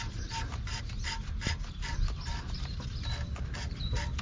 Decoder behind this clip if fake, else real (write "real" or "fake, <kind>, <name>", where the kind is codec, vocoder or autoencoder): real